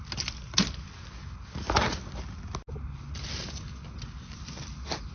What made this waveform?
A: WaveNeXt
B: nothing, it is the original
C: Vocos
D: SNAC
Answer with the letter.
B